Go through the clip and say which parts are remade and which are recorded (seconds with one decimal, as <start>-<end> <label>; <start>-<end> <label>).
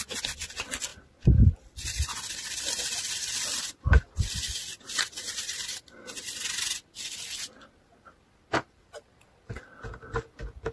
0.0-10.7 recorded